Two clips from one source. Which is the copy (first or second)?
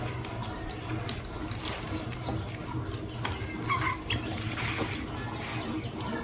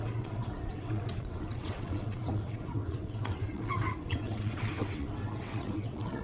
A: second